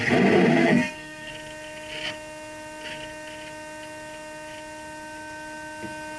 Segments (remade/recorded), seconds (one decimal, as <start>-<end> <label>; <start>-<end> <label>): 0.0-0.6 recorded; 0.6-1.3 remade; 1.3-6.2 recorded